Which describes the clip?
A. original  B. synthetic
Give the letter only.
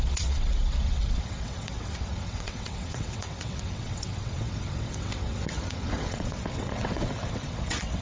B